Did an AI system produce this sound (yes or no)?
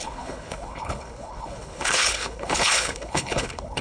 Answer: yes